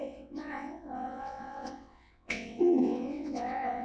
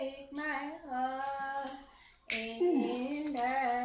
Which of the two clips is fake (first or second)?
first